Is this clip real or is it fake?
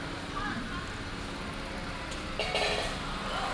real